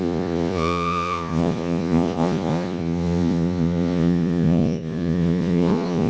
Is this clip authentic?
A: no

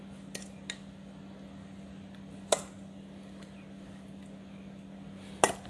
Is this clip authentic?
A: yes